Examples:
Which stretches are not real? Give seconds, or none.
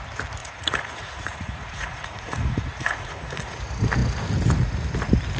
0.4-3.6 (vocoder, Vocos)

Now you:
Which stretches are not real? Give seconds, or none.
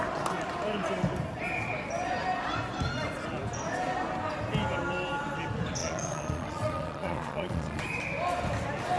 5.8-7.8 (vocoder, Vocos)